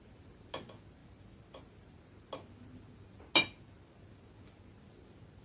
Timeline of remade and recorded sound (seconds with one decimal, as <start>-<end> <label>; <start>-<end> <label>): 0.0-5.4 recorded

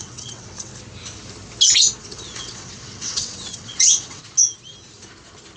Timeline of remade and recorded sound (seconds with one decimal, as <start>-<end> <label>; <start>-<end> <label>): 0.0-0.7 remade; 0.7-2.0 recorded; 2.0-4.2 remade; 4.2-5.6 recorded

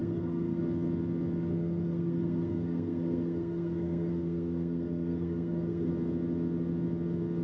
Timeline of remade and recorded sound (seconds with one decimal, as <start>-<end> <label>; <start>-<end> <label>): 0.0-0.6 remade; 0.6-1.5 recorded; 1.5-5.9 remade; 5.9-7.4 recorded

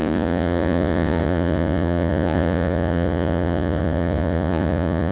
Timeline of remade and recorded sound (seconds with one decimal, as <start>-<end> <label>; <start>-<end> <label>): 0.0-5.1 remade

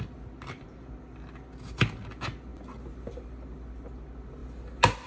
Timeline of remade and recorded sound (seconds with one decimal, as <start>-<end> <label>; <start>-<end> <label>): 0.0-5.1 recorded

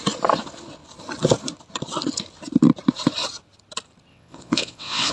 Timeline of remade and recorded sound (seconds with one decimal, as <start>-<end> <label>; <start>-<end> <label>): 0.0-4.1 recorded; 4.1-5.1 remade

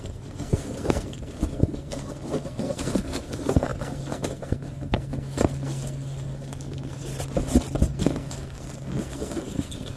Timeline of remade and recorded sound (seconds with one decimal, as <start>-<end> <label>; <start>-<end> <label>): 0.0-7.1 remade; 7.1-7.8 recorded; 7.8-10.0 remade

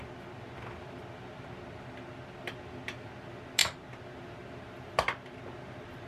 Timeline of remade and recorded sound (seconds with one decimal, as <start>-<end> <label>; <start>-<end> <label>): 0.0-6.1 recorded